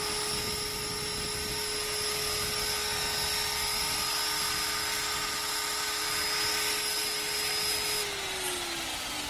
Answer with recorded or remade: recorded